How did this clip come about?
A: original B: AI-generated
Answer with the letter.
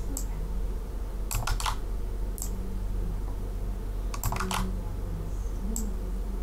A